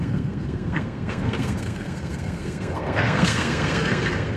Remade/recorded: remade